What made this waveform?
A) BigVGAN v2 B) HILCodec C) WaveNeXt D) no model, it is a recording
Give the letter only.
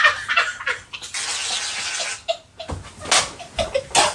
D